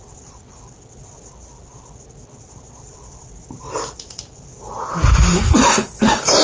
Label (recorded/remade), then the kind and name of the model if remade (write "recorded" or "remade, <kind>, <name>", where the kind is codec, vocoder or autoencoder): recorded